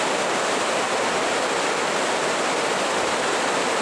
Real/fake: real